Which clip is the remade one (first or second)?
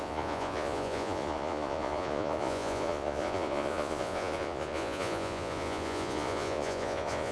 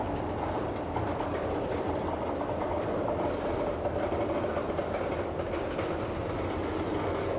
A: first